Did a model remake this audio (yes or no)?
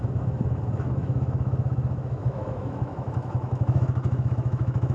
yes